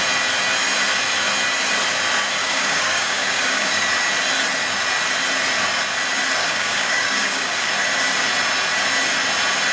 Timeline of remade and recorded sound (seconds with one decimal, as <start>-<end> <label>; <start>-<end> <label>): 0.0-2.4 recorded; 2.4-3.8 remade; 3.8-6.4 recorded; 6.4-7.7 remade; 7.7-9.7 recorded